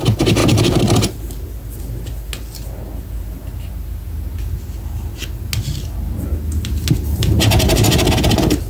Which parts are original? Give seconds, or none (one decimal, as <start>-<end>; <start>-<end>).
0.0-8.7